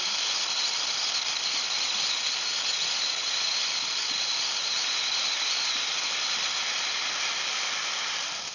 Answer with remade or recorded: recorded